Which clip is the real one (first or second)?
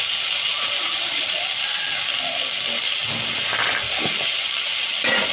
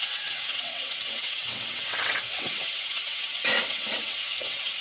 first